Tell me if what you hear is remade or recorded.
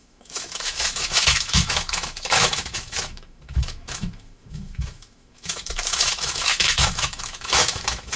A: remade